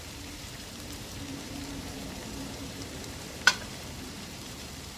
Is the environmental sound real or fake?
fake